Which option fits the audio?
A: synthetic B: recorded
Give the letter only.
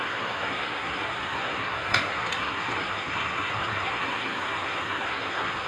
A